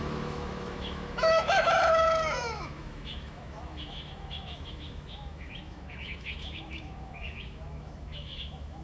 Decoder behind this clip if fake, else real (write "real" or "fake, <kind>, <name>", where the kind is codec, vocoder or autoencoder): fake, autoencoder, DAC-VAE